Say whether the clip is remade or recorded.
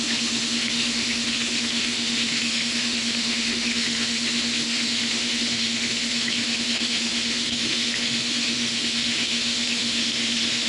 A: remade